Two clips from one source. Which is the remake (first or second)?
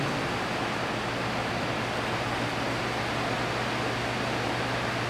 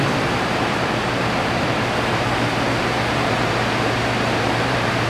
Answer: second